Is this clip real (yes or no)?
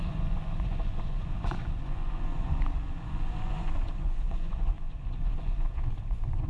no